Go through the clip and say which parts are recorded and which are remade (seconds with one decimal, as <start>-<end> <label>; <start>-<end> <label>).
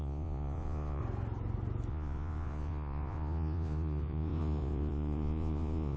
0.0-1.0 remade; 1.0-1.9 recorded; 1.9-6.0 remade